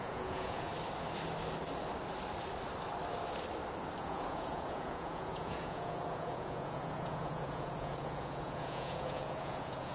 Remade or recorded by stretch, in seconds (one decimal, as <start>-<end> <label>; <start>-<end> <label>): 0.0-0.7 remade; 0.7-4.0 recorded; 4.0-9.9 remade